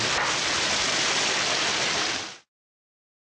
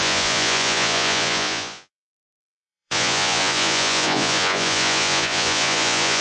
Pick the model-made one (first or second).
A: second